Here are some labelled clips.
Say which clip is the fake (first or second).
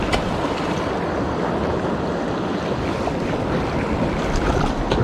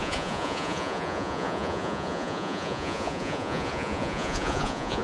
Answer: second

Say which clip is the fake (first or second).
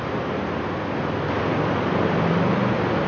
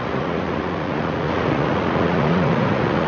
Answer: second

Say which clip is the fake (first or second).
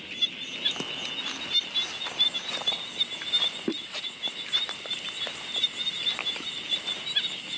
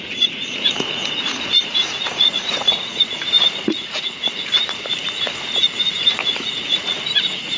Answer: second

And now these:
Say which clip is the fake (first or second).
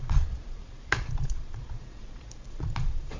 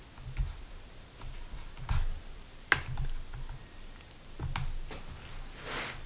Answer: first